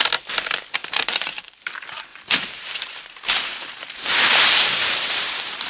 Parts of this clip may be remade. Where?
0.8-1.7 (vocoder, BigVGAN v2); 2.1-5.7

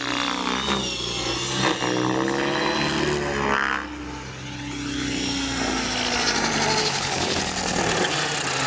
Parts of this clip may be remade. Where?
6.8-7.4 (codec, HILCodec)

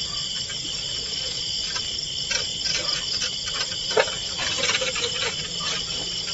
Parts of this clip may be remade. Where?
none

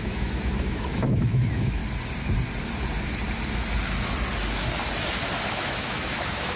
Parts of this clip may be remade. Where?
0.0-1.8 (autoencoder, DAC-VAE); 5.5-6.6

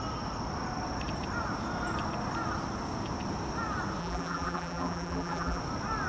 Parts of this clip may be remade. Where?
4.0-5.6 (vocoder, BigVGAN v2)